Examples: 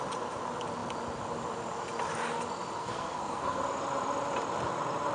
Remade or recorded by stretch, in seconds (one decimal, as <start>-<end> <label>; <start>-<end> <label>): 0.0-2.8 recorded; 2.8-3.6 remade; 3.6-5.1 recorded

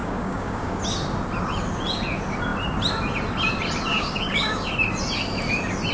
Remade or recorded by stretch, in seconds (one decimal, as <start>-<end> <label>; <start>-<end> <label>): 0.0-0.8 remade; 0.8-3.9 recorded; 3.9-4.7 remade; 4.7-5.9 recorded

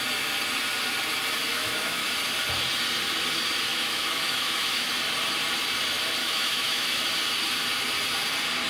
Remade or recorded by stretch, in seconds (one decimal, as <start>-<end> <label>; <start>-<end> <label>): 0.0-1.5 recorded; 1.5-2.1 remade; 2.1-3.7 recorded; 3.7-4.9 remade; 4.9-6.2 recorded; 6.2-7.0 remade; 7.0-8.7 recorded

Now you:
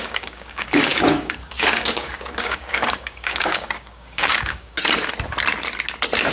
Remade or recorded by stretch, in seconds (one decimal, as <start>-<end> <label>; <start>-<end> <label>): 0.0-4.8 remade; 4.8-6.3 recorded